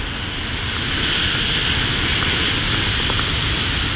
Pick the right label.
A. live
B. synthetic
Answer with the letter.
A